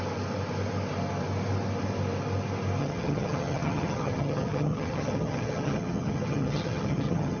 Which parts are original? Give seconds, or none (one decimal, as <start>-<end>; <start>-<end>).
0.0-2.8